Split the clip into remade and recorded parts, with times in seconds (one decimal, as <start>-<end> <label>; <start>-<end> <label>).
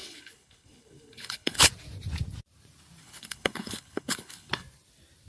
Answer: 0.0-1.7 remade; 1.7-3.0 recorded; 3.0-4.5 remade; 4.5-5.3 recorded